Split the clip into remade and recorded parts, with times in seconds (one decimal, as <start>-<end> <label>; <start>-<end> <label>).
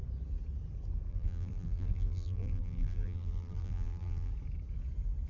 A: 0.0-1.1 recorded; 1.1-4.3 remade; 4.3-5.3 recorded